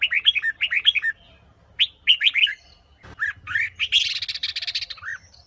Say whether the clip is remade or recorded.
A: recorded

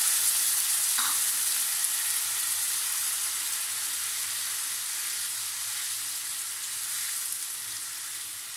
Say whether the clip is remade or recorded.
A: recorded